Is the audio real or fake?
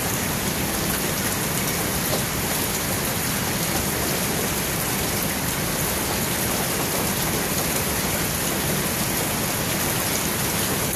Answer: real